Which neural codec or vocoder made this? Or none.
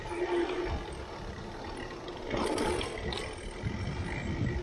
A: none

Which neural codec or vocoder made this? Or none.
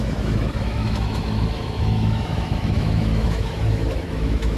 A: autoencoder, DAC-VAE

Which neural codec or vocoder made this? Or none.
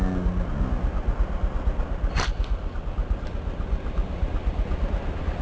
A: none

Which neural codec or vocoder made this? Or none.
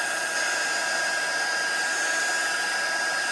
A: none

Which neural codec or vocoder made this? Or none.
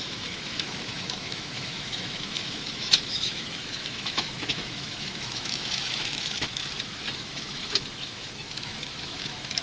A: autoencoder, DAC-VAE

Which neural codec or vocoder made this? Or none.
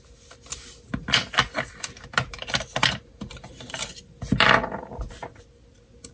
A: none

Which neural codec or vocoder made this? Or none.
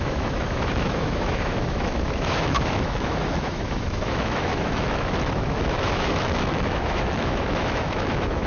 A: autoencoder, DAC-VAE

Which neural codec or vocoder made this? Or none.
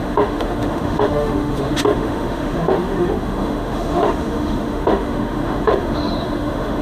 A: autoencoder, DAC-VAE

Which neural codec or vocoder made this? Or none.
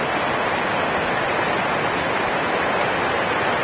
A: none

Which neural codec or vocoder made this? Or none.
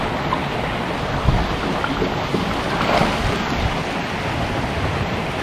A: none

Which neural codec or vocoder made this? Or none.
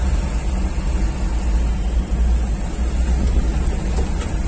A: none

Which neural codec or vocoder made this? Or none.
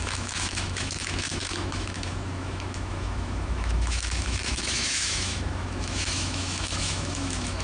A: autoencoder, DAC-VAE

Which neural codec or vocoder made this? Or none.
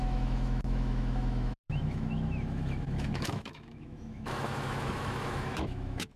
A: autoencoder, DAC-VAE